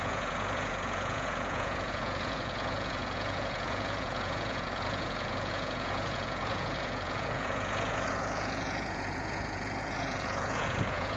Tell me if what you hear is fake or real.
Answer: fake